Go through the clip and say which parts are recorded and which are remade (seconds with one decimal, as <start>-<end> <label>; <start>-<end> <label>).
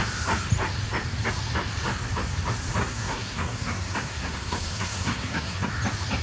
0.0-2.8 recorded; 2.8-5.7 remade; 5.7-6.2 recorded